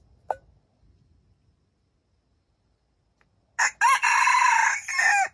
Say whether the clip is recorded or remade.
recorded